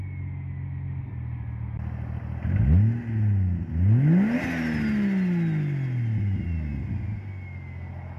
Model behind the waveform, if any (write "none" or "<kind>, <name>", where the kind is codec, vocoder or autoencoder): none